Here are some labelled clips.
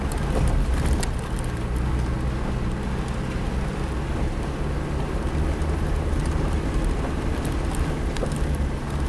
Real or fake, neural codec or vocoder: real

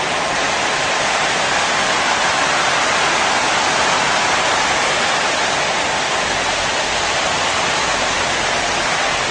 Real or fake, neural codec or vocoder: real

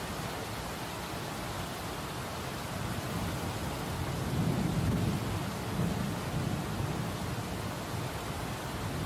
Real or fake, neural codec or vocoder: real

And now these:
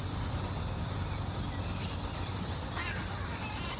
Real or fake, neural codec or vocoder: real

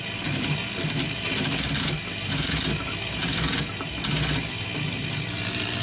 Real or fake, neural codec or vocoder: real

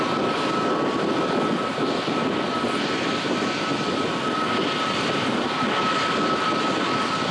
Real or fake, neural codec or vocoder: real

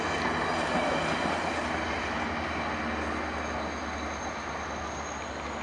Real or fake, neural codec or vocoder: real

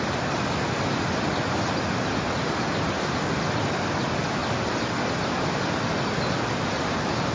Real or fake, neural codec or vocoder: real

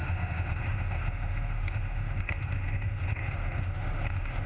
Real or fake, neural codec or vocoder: fake, autoencoder, DAC-VAE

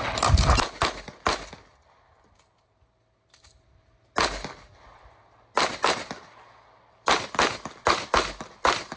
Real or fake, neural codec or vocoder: real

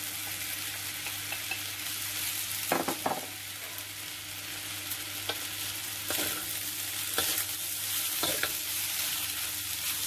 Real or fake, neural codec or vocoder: real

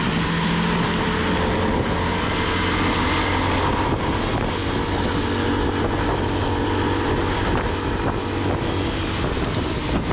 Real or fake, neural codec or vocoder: real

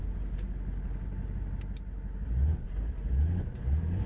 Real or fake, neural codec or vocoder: real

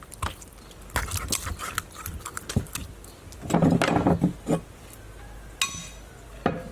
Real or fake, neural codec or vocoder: real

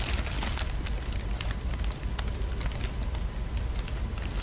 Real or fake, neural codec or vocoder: real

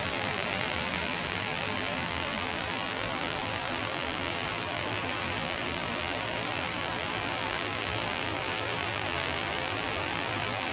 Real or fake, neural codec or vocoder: fake, vocoder, BigVGAN v2